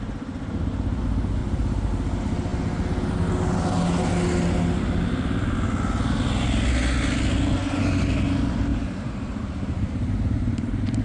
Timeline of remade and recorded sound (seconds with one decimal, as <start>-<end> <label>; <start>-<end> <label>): 0.0-1.4 recorded; 1.4-1.9 remade; 1.9-8.7 recorded; 8.7-11.0 remade